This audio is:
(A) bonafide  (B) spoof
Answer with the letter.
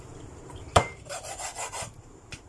B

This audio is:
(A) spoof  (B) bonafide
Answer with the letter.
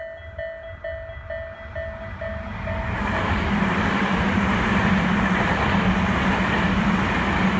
B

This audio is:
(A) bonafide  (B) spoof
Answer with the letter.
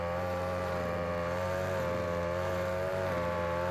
B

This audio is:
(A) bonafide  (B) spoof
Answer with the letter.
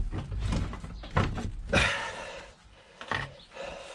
A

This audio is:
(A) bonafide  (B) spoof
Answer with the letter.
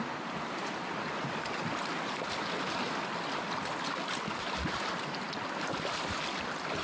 A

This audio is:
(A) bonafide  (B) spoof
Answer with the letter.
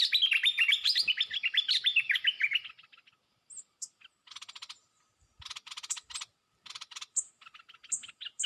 B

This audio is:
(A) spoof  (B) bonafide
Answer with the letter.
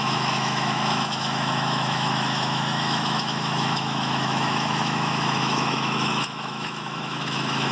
A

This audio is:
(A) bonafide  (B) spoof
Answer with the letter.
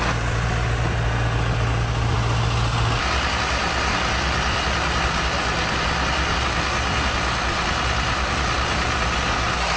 A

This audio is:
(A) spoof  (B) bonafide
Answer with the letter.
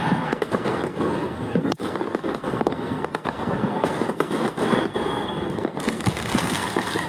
A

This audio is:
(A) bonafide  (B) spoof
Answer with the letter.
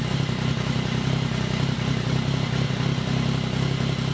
A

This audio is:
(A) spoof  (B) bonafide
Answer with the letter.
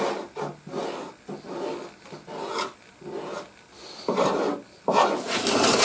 B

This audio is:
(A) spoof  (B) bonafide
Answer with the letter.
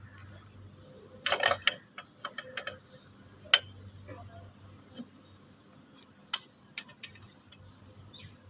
B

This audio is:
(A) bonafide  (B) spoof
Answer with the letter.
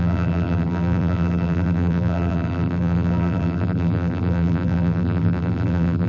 B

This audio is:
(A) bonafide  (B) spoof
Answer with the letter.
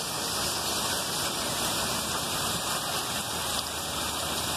A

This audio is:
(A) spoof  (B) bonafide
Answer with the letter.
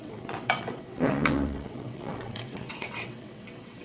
A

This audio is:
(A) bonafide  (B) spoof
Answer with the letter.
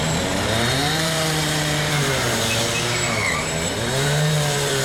B